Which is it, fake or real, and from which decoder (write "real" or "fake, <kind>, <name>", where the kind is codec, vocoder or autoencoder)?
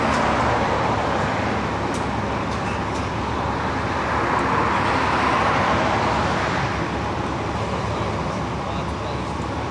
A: real